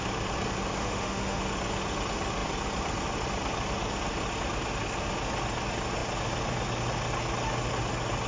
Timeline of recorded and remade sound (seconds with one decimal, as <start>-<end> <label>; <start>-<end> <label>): 0.0-0.8 recorded; 0.8-1.4 remade; 1.4-8.3 recorded